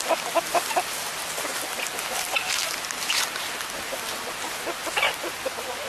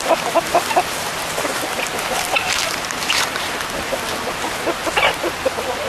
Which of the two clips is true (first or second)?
first